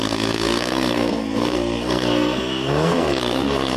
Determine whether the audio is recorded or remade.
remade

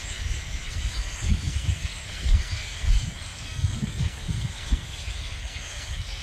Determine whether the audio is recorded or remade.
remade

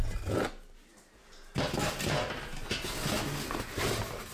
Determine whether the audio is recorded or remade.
recorded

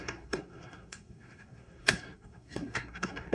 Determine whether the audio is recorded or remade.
remade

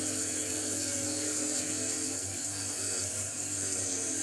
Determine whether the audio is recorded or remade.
remade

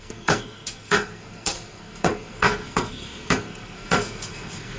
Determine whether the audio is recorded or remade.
remade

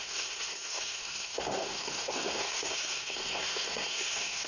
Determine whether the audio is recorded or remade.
remade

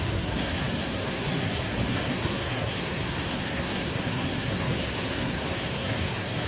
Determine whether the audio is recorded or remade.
remade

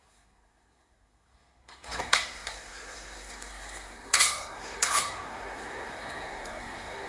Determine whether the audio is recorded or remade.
remade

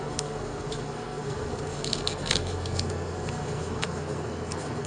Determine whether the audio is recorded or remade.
remade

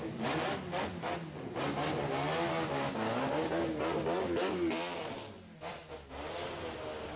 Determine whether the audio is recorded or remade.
recorded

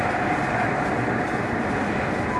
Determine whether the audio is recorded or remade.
recorded